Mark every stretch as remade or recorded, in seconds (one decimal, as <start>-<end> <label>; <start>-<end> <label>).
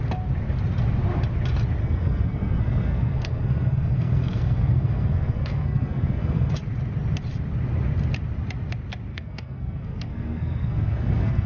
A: 0.0-1.8 recorded; 1.8-6.5 remade; 6.5-9.1 recorded; 9.1-11.5 remade